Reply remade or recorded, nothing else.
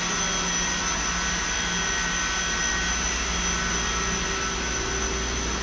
recorded